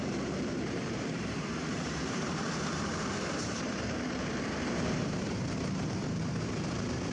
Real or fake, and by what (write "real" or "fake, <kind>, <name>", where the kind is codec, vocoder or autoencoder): fake, vocoder, BigVGAN v2